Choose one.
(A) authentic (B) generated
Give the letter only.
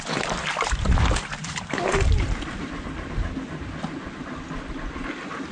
A